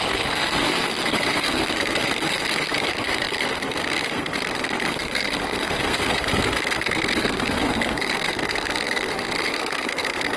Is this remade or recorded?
remade